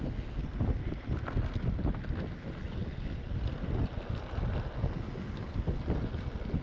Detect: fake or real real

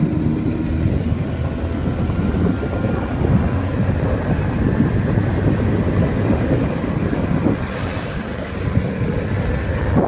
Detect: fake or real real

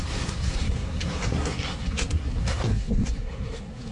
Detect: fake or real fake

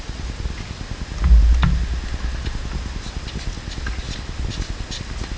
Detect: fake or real real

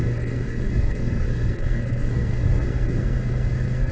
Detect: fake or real fake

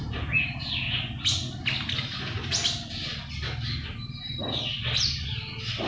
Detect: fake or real real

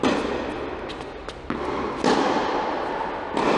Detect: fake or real real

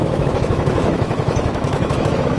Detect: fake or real fake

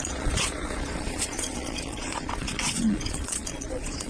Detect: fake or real fake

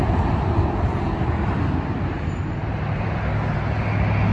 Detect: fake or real real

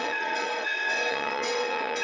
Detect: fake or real fake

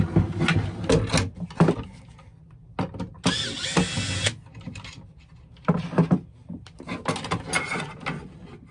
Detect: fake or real real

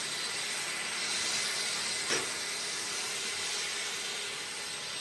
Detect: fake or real real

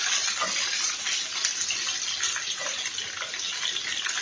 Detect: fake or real real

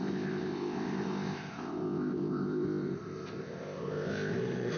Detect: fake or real fake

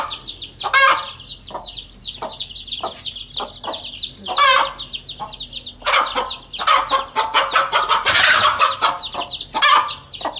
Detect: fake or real real